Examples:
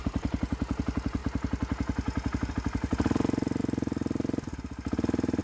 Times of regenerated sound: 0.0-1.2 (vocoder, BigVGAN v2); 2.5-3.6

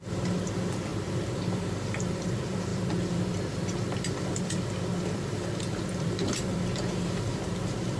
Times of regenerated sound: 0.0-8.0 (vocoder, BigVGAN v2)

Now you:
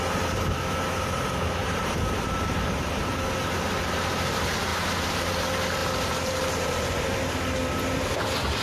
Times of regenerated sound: 1.6-3.0 (vocoder, BigVGAN v2); 5.8-7.0

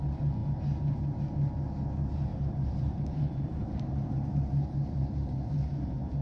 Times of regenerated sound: 2.3-6.2 (vocoder, BigVGAN v2)

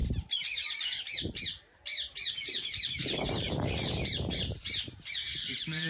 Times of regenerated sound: 0.8-5.9 (vocoder, BigVGAN v2)

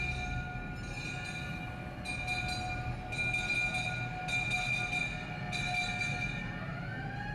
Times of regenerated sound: none

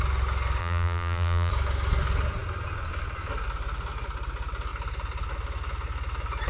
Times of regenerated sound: 0.6-1.5 (vocoder, BigVGAN v2)

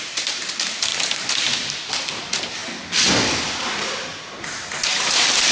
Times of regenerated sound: 0.0-0.9 (vocoder, BigVGAN v2); 1.9-2.6